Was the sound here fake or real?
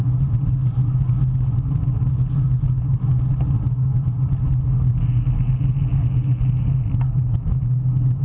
real